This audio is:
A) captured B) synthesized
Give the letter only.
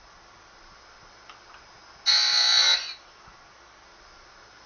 A